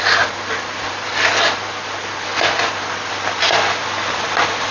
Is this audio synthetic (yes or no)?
no